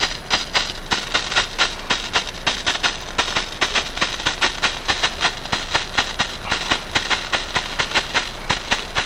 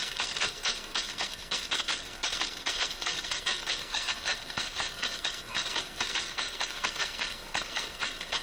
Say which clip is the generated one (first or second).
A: second